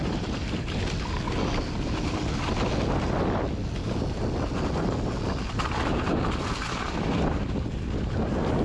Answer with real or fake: real